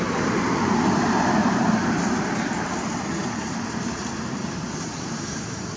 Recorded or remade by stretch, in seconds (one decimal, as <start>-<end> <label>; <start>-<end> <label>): 0.0-1.4 recorded; 1.4-2.0 remade; 2.0-3.2 recorded; 3.2-5.8 remade